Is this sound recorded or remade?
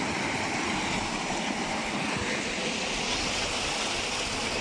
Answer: recorded